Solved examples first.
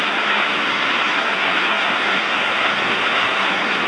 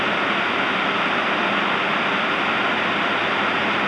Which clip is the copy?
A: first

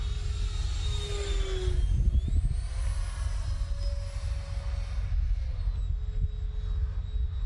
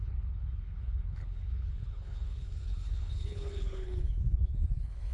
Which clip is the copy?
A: second